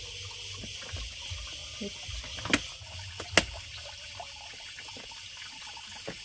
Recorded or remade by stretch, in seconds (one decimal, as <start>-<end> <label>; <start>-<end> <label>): 0.0-6.2 recorded